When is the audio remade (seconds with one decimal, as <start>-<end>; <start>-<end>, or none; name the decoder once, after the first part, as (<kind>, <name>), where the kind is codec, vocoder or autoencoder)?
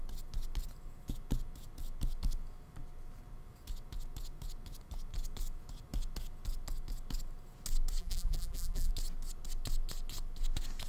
8.0-8.9 (vocoder, BigVGAN v2)